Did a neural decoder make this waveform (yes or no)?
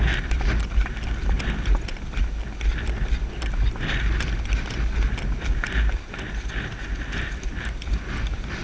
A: no